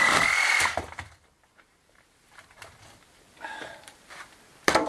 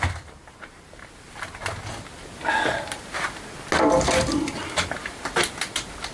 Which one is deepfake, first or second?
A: first